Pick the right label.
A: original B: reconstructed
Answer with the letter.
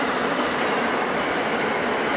A